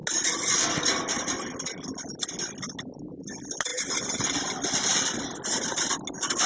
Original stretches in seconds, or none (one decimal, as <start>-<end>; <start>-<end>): 0.0-6.5